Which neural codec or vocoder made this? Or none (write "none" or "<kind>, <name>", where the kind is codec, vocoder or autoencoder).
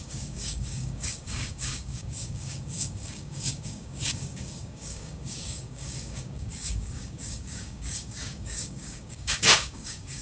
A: codec, DAC